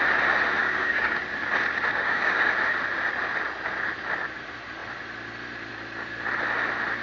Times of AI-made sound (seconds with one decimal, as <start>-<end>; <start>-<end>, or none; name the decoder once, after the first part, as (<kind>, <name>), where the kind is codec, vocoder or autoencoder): 0.6-1.2 (codec, DAC); 1.9-2.5

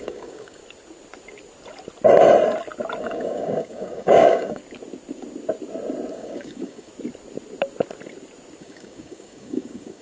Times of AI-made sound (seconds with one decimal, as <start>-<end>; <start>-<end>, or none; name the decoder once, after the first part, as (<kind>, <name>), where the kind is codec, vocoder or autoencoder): 0.0-0.6 (codec, DAC); 3.0-4.6; 6.1-6.9; 8.6-10.0

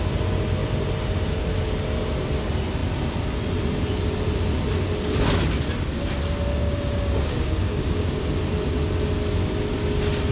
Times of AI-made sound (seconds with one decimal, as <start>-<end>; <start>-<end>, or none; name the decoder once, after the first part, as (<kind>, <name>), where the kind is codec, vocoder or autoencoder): 6.5-8.2 (codec, DAC)

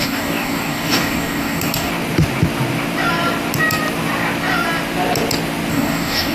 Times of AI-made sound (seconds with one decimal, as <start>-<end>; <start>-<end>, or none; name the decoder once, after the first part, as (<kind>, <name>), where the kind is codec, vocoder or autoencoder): 0.0-1.9 (codec, DAC); 5.7-6.3

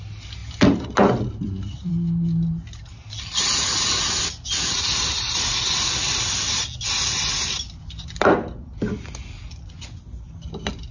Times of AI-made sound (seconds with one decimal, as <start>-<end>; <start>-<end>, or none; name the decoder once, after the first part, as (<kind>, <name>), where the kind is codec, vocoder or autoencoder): none